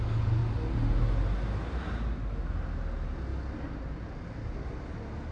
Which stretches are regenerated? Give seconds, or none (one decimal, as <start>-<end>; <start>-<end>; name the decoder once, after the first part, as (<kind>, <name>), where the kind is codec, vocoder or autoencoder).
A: none